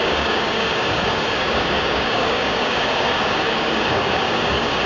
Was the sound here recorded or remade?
remade